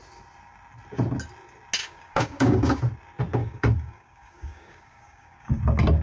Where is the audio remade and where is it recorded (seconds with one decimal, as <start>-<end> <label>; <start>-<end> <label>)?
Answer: 0.0-1.8 recorded; 1.8-2.8 remade; 2.8-3.4 recorded; 3.4-5.6 remade; 5.6-6.0 recorded